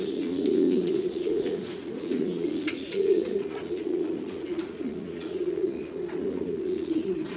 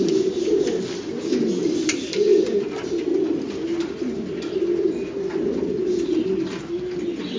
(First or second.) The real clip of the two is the second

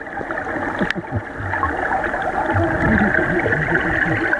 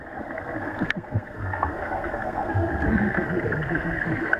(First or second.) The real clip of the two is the first